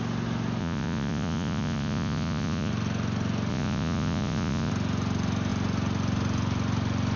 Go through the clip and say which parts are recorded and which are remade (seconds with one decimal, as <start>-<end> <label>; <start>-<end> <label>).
0.0-0.6 recorded; 0.6-2.7 remade; 2.7-3.5 recorded; 3.5-4.7 remade; 4.7-7.2 recorded